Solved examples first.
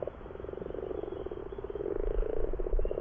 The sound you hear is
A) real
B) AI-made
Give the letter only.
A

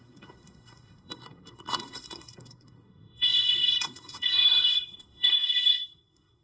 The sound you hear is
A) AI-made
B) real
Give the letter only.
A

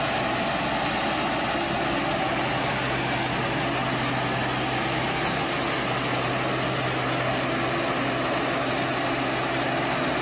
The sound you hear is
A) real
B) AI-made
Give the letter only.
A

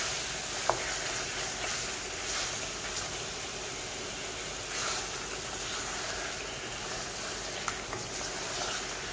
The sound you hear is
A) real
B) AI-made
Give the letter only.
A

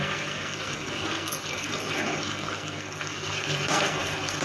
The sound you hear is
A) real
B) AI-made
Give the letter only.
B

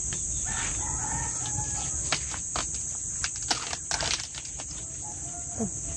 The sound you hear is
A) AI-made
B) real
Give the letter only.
B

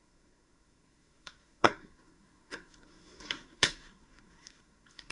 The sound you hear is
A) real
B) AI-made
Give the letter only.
B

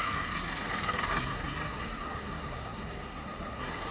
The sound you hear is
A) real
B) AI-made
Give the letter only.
B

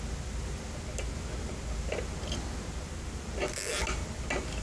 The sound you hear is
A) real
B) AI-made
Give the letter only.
A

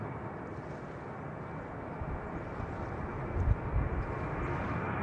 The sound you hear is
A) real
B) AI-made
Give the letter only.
A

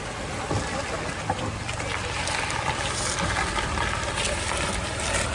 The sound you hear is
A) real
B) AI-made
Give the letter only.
A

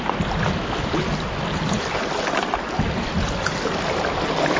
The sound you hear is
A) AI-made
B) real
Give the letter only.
B